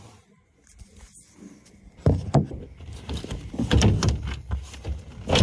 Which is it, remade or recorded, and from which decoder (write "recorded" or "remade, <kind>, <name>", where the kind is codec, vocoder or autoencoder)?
recorded